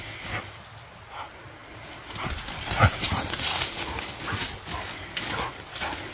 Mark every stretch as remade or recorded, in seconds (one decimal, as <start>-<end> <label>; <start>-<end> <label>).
0.0-3.5 recorded; 3.5-5.3 remade; 5.3-6.1 recorded